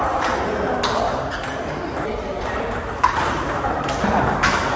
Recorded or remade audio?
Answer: remade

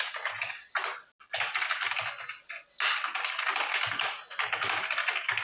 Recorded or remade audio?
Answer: recorded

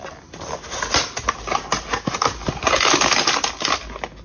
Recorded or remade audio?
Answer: recorded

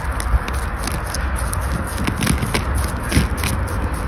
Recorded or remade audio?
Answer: recorded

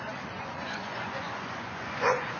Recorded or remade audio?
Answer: remade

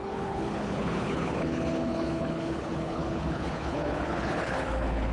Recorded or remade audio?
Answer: remade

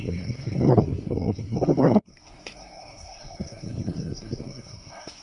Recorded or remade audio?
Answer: remade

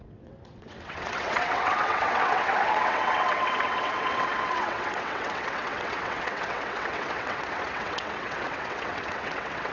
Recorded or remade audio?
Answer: remade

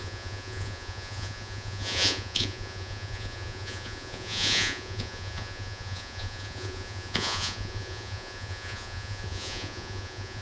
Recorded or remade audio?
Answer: remade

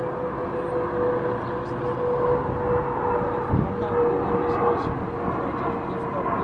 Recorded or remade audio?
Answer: recorded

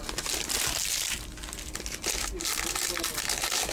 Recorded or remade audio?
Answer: recorded